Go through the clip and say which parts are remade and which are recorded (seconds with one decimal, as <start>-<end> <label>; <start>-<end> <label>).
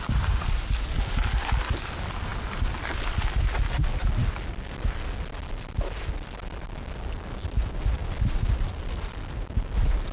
0.0-10.1 recorded